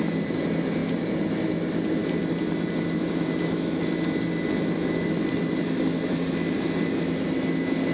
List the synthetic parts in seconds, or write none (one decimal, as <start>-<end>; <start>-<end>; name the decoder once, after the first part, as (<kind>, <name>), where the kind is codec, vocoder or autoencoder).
none